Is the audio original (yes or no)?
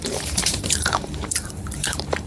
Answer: no